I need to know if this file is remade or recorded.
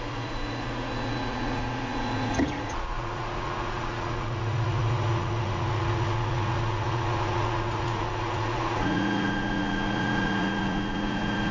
remade